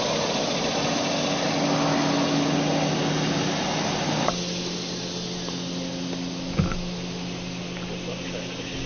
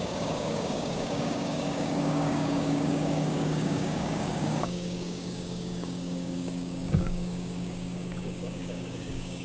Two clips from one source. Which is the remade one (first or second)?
second